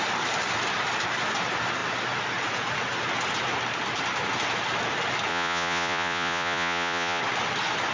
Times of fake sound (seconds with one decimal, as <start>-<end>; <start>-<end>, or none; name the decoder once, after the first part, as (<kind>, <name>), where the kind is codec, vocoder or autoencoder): 5.3-7.2 (vocoder, Vocos)

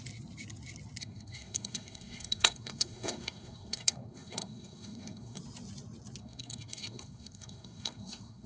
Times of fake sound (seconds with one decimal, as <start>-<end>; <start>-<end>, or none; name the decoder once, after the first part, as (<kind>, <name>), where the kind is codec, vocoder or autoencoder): 1.0-5.4 (codec, SNAC); 6.2-8.5

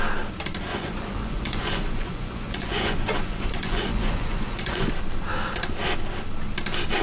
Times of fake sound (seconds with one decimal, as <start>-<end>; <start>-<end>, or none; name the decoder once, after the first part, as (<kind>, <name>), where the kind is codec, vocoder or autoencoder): 0.7-4.9 (vocoder, Vocos)

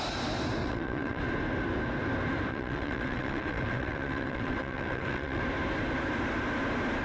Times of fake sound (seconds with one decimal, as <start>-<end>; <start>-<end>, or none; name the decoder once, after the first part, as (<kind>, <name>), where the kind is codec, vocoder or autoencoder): 0.6-1.2 (vocoder, WaveNeXt); 2.5-5.4